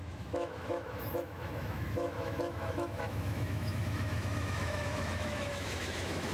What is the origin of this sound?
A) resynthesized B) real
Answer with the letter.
A